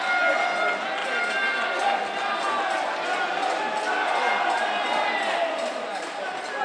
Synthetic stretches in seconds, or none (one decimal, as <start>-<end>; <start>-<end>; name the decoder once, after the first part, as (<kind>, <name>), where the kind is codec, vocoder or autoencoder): none